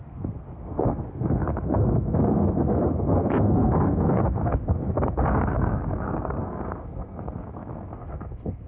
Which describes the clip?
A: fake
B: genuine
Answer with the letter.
A